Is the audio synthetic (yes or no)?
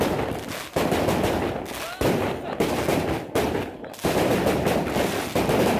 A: no